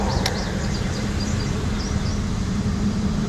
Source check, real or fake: real